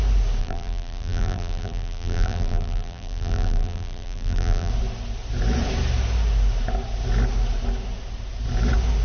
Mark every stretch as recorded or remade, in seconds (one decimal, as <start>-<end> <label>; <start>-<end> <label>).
0.0-0.4 recorded; 0.4-4.7 remade; 4.7-9.0 recorded

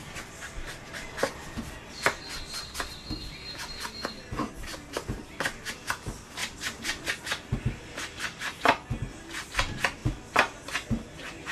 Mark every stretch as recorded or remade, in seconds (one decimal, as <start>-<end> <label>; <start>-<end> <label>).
0.0-11.5 recorded

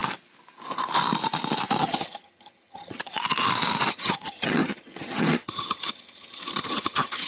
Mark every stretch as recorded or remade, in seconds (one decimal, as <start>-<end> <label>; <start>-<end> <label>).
0.0-1.8 recorded; 1.8-3.1 remade; 3.1-3.9 recorded; 3.9-7.3 remade

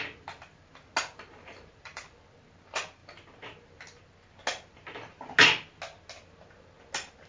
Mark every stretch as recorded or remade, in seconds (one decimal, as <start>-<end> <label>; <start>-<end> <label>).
0.0-1.5 recorded; 1.5-2.0 remade; 2.0-7.3 recorded

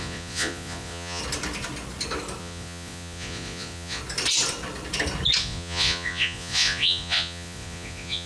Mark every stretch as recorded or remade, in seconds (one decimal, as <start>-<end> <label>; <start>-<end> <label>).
0.0-1.2 remade; 1.2-2.4 recorded; 2.4-4.0 remade; 4.0-5.4 recorded; 5.4-8.3 remade

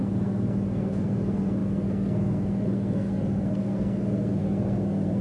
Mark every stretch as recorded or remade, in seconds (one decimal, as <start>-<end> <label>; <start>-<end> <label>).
0.0-5.2 remade

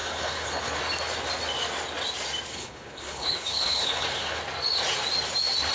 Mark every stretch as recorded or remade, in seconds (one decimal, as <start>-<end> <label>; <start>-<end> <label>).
0.0-0.8 remade; 0.8-2.5 recorded; 2.5-4.4 remade; 4.4-5.7 recorded

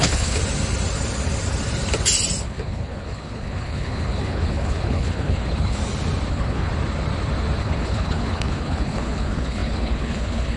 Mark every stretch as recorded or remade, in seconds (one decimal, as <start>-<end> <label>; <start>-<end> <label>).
0.0-0.4 remade; 0.4-2.4 recorded; 2.4-5.8 remade; 5.8-6.3 recorded; 6.3-6.7 remade; 6.7-7.6 recorded; 7.6-10.6 remade